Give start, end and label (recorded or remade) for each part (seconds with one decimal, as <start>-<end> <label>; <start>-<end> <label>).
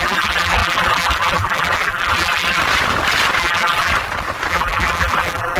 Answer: 0.0-2.6 remade; 2.6-3.4 recorded; 3.4-3.9 remade; 3.9-4.5 recorded; 4.5-5.6 remade